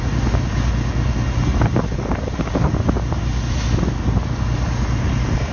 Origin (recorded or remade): recorded